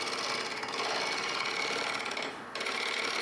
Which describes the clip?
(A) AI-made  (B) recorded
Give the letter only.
B